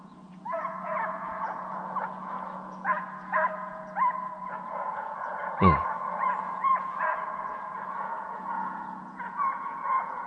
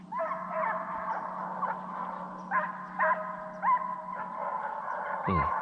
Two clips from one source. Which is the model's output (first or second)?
first